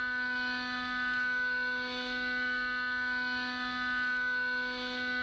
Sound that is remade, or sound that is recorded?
recorded